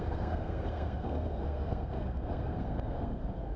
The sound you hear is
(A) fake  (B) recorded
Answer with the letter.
A